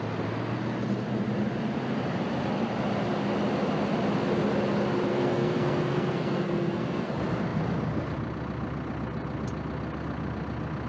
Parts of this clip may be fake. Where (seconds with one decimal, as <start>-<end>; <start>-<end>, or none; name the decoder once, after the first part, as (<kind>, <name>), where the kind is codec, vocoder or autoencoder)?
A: 5.1-7.1 (codec, SNAC)